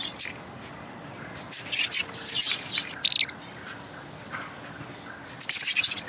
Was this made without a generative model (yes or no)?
yes